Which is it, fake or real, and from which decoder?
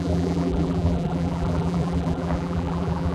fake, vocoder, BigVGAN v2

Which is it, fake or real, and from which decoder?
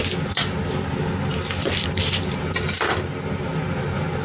fake, vocoder, BigVGAN v2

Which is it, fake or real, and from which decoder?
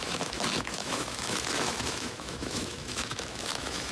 fake, autoencoder, DAC-VAE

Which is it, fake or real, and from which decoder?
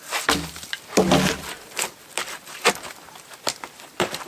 real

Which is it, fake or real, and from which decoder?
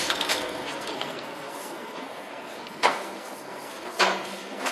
fake, codec, SNAC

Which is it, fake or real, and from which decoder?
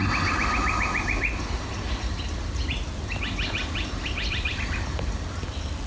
real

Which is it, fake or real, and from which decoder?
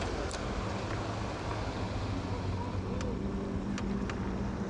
real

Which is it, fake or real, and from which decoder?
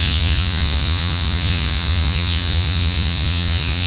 fake, vocoder, Vocos